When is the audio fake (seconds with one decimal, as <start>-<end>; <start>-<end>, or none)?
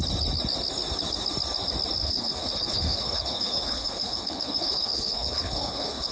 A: 2.0-6.1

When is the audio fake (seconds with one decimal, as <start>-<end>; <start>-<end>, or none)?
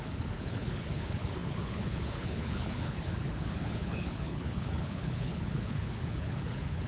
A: 0.0-6.9